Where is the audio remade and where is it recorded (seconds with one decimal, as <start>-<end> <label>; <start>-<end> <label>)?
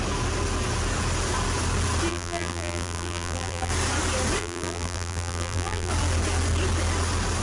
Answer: 0.0-2.1 recorded; 2.1-3.7 remade; 3.7-4.4 recorded; 4.4-5.9 remade; 5.9-7.4 recorded